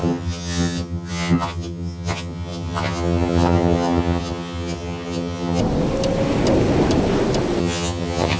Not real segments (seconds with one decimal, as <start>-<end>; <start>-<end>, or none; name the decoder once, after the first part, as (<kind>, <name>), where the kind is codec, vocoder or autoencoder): 0.0-5.6 (vocoder, HiFi-GAN); 7.6-8.4